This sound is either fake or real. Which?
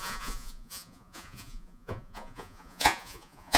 fake